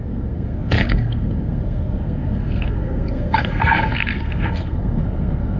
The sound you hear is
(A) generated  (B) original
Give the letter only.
A